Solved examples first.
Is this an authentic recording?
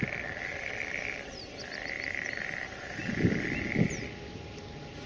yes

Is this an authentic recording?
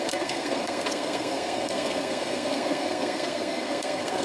no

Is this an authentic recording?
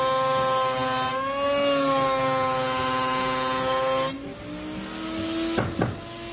yes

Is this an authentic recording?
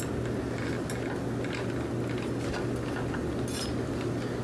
yes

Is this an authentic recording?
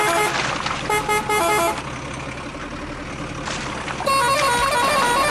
yes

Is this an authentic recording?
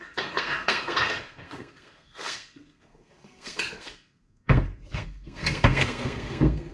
no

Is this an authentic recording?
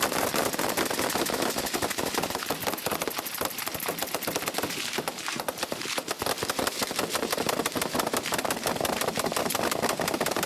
yes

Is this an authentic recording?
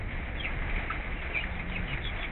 yes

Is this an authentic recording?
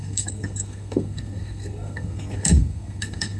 no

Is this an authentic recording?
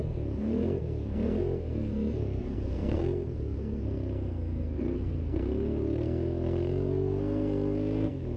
no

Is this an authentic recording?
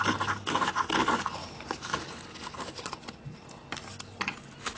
yes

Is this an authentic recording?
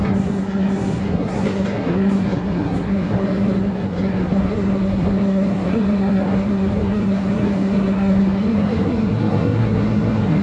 no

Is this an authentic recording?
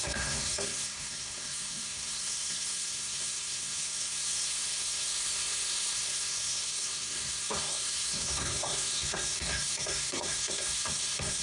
no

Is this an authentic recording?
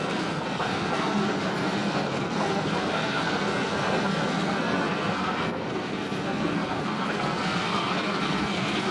no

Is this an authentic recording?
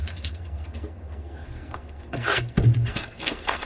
no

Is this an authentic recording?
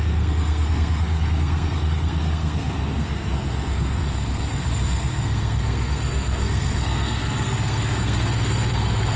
no